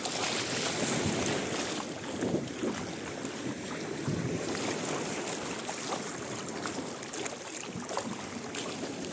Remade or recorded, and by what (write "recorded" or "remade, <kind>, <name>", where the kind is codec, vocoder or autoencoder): recorded